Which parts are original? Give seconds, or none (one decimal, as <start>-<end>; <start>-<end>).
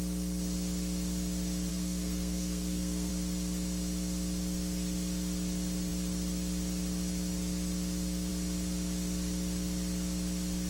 0.0-1.7; 3.1-10.7